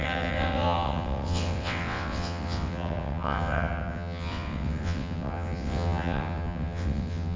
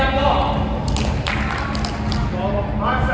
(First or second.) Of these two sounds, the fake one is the first